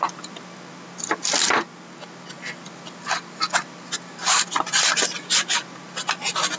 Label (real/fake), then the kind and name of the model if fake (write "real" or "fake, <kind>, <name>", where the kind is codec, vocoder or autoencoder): real